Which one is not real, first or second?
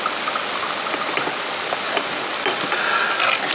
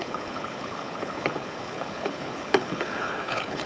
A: second